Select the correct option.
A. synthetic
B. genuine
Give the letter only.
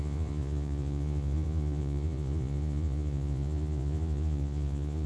A